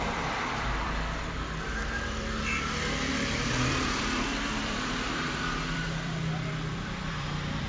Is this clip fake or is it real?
fake